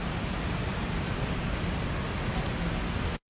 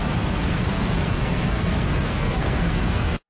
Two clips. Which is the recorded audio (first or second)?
first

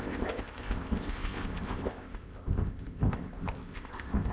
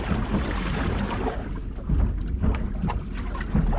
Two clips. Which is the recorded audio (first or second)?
second